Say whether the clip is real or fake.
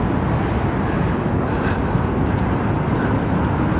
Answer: real